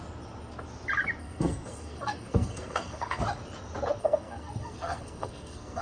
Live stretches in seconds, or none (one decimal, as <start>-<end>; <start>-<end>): 0.0-1.2; 3.2-4.0